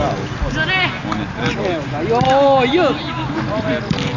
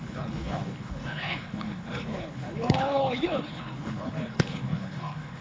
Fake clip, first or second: second